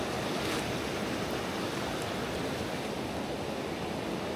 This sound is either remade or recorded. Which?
recorded